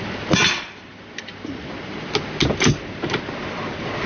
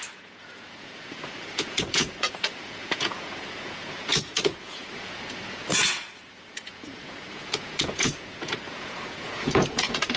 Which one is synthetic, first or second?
second